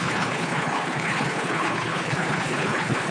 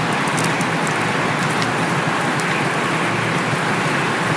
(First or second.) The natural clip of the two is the second